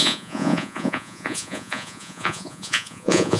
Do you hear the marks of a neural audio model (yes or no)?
yes